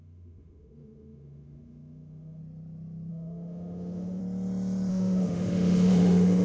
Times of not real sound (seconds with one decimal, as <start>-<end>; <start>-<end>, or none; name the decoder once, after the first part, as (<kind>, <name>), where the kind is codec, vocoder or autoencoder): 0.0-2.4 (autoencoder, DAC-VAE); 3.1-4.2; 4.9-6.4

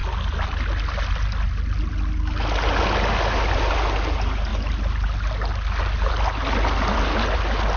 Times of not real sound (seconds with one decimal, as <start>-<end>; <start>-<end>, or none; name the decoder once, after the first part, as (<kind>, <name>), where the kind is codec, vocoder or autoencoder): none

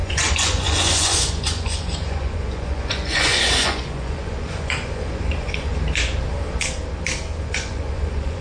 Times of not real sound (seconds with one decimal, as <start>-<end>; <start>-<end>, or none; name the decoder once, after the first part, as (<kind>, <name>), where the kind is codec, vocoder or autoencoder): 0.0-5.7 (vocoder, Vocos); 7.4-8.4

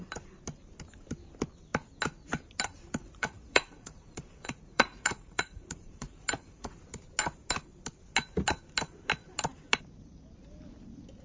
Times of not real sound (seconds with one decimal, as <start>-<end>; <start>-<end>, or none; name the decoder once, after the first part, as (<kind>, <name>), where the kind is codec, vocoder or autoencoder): 3.0-6.8 (vocoder, Vocos)

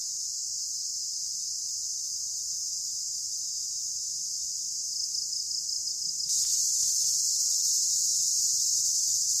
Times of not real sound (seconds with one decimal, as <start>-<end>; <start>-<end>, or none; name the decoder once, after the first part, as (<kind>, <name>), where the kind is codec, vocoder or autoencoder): none

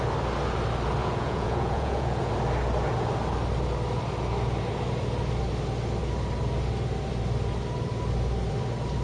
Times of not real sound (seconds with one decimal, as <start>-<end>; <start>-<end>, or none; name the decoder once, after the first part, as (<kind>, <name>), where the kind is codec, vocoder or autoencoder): 1.0-2.3 (vocoder, Vocos)

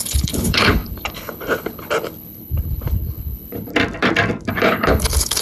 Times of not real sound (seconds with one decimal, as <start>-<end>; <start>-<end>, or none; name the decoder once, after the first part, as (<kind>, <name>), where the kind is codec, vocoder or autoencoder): 0.0-3.7 (codec, HILCodec); 4.5-5.4